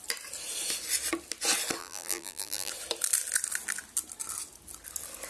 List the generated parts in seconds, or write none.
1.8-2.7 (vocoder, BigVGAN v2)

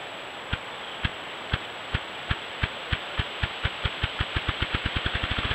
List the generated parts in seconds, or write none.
none